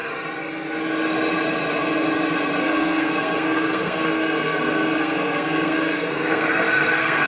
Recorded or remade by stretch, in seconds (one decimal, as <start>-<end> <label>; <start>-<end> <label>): 0.0-2.6 recorded; 2.6-7.3 remade